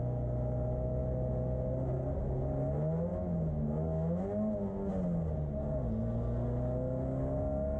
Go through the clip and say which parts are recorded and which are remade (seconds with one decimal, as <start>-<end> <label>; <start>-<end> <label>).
0.0-3.1 recorded; 3.1-4.2 remade; 4.2-7.8 recorded